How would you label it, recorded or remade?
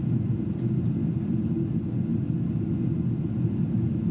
recorded